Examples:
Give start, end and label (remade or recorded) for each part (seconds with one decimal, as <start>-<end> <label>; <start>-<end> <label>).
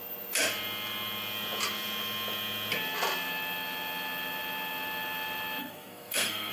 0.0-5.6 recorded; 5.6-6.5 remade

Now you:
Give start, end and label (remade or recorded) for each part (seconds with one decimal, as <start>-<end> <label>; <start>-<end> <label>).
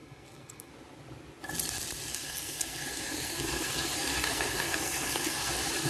0.0-0.7 remade; 0.7-2.1 recorded; 2.1-5.5 remade; 5.5-5.9 recorded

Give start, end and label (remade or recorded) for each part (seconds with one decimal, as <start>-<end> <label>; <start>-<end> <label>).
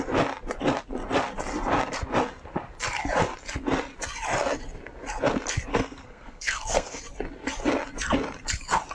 0.0-5.7 recorded; 5.7-7.0 remade; 7.0-8.9 recorded